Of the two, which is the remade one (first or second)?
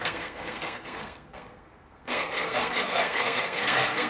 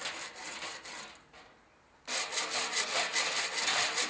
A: first